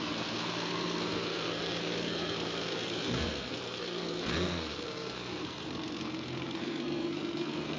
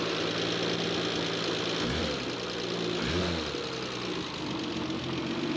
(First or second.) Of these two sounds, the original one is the second